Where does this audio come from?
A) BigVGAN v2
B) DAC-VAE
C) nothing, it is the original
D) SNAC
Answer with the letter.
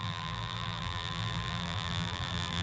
A